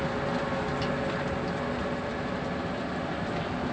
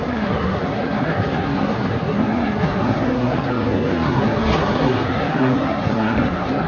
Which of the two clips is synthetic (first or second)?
second